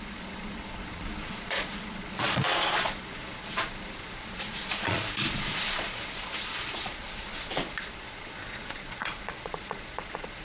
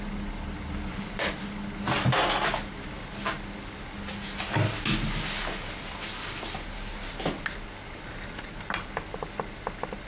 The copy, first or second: first